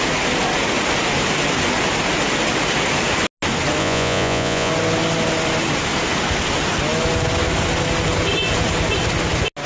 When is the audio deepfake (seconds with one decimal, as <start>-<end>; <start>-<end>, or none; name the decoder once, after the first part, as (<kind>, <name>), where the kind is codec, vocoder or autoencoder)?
3.8-4.7 (vocoder, Vocos)